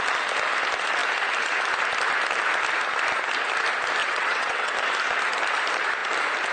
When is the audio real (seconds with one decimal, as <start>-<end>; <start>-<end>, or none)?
0.0-4.0; 4.7-6.5